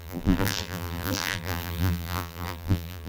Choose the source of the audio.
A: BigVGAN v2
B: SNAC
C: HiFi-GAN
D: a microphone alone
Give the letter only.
A